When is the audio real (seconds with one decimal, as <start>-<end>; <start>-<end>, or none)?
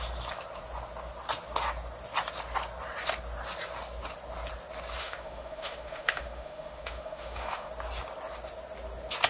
0.0-5.0; 7.7-9.3